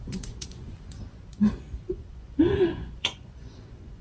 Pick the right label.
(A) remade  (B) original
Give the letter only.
A